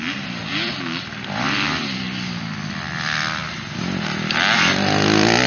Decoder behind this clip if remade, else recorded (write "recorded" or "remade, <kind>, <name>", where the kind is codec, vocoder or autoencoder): recorded